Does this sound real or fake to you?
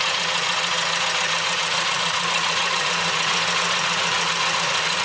fake